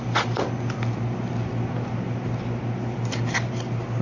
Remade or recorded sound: remade